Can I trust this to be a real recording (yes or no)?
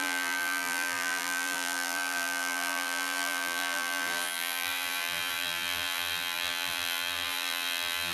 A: no